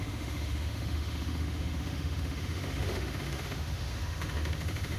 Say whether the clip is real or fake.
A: fake